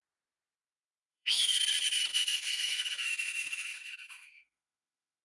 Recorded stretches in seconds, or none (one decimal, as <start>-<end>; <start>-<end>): 0.0-1.1; 1.6-2.1